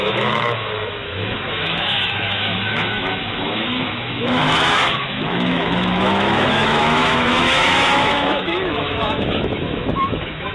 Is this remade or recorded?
remade